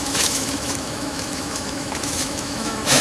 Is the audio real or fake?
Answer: fake